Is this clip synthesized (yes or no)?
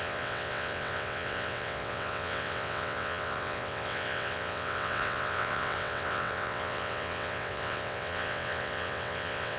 yes